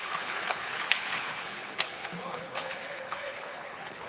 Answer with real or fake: fake